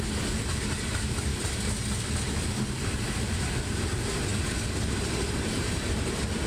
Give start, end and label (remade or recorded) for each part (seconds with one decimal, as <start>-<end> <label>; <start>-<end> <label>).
0.0-6.5 recorded